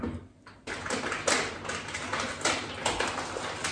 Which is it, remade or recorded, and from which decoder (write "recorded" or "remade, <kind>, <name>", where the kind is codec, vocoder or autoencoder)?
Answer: recorded